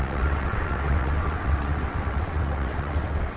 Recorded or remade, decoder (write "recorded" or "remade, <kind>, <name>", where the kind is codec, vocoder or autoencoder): remade, vocoder, WaveNeXt